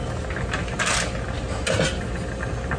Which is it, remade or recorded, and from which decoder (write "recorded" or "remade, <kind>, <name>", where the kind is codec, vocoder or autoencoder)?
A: recorded